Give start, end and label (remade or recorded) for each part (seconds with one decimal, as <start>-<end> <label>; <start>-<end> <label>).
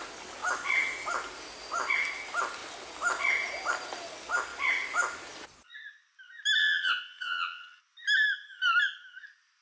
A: 0.0-6.6 recorded; 6.6-7.8 remade; 7.8-9.6 recorded